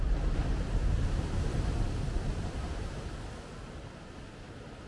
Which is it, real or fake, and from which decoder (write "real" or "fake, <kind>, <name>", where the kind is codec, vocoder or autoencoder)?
real